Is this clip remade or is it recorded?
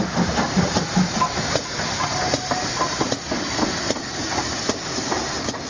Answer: recorded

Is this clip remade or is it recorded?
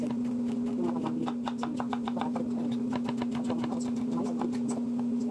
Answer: recorded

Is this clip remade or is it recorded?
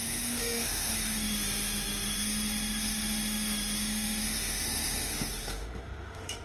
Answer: remade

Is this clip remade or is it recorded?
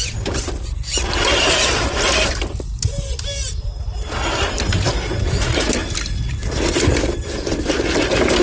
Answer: recorded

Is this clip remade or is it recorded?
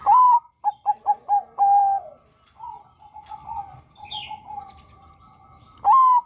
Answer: recorded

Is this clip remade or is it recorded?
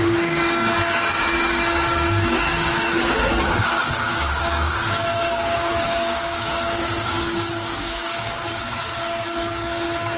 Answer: remade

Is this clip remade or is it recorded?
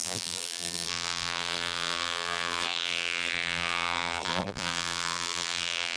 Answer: remade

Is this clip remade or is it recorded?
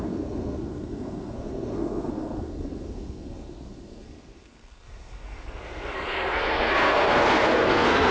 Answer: remade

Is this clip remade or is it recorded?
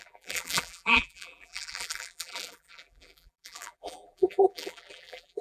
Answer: remade